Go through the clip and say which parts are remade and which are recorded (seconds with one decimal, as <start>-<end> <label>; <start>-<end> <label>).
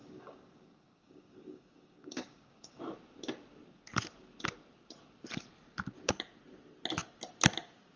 0.0-2.8 remade; 2.8-8.0 recorded